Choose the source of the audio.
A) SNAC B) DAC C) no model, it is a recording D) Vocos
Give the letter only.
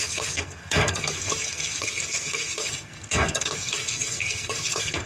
A